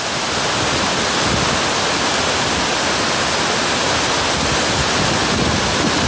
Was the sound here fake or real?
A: real